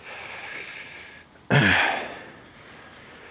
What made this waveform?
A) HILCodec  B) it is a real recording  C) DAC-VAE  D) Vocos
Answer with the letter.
B